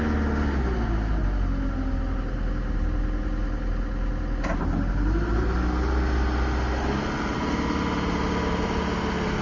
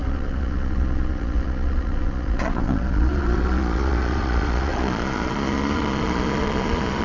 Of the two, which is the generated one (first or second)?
second